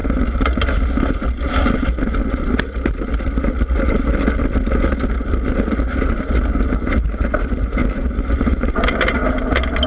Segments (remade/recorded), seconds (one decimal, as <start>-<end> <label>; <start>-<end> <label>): 0.0-9.9 recorded